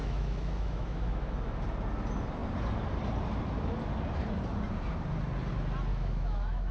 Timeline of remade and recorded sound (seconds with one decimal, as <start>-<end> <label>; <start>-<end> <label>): 0.0-1.3 remade; 1.3-5.9 recorded; 5.9-6.7 remade